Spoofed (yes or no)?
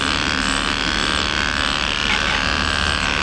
no